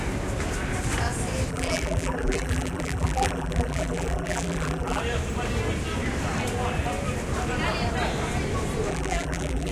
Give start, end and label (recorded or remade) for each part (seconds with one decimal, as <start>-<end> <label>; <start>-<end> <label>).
0.0-1.5 recorded; 1.5-5.0 remade; 5.0-8.9 recorded; 8.9-9.7 remade